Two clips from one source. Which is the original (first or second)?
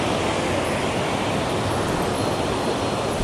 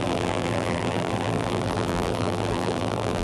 first